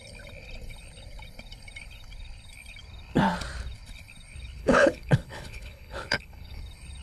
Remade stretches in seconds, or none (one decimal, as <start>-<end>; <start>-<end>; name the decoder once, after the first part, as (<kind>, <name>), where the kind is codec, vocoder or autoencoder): 4.6-6.6 (codec, HILCodec)